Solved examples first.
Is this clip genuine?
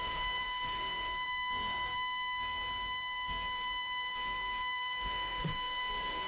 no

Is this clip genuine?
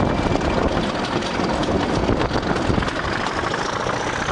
yes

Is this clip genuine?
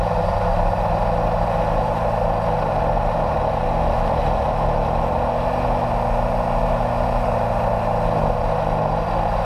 yes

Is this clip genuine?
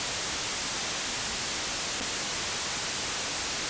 yes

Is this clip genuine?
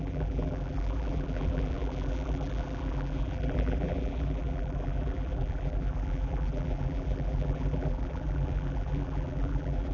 no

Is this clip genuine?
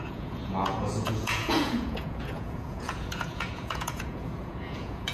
no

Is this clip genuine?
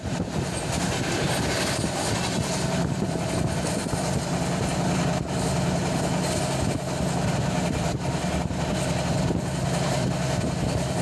yes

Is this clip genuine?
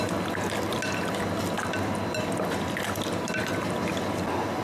yes